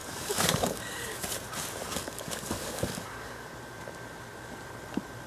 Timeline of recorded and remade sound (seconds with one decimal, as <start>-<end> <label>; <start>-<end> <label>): 0.0-1.3 remade; 1.3-1.8 recorded; 1.8-3.5 remade; 3.5-5.3 recorded